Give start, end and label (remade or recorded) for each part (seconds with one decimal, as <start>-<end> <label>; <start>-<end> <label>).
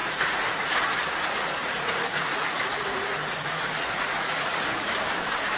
0.0-1.0 remade; 1.0-1.6 recorded; 1.6-5.0 remade; 5.0-5.6 recorded